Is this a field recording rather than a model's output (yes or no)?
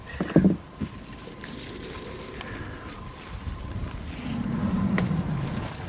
yes